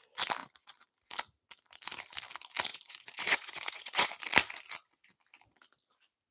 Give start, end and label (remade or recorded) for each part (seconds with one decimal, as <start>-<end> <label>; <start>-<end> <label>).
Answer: 0.0-2.7 recorded; 2.7-4.1 remade; 4.1-6.3 recorded